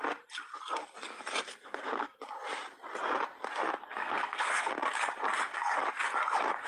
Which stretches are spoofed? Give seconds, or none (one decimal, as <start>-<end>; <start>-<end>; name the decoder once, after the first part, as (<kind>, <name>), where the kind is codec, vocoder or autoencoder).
1.6-2.2 (codec, SNAC); 4.0-4.7